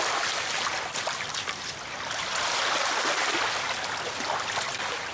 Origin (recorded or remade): recorded